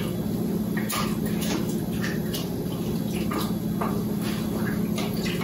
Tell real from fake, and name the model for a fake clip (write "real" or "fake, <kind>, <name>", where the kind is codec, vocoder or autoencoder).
real